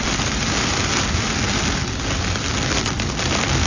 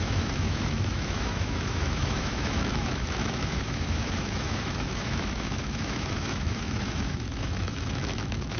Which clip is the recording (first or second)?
first